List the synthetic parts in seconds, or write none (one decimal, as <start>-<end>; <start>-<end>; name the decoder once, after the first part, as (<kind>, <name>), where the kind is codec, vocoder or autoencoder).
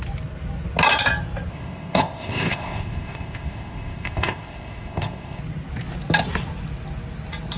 1.5-5.4 (codec, ZipCodec)